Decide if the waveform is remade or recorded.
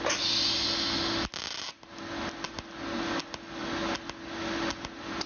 recorded